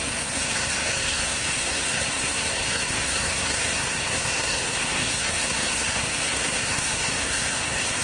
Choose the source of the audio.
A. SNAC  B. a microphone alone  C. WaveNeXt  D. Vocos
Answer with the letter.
A